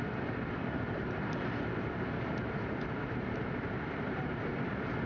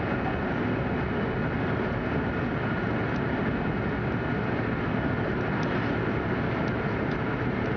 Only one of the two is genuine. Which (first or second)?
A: second